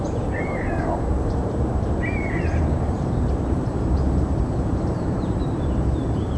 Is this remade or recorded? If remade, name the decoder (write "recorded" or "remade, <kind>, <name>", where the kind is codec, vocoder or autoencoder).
remade, vocoder, BigVGAN v2